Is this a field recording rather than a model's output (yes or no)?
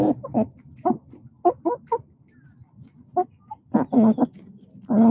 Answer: yes